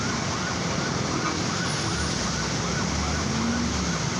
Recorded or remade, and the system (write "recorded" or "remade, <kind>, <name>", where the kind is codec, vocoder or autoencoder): recorded